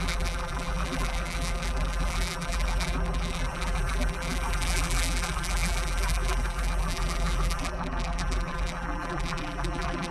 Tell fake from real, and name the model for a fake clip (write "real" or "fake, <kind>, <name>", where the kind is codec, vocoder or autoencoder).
fake, vocoder, BigVGAN v2